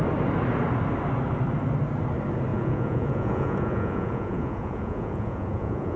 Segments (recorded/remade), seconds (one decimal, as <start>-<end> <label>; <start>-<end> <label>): 0.0-2.5 recorded; 2.5-6.0 remade